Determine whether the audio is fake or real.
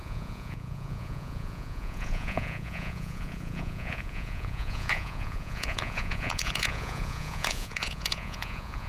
fake